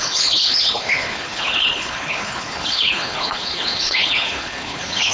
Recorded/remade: remade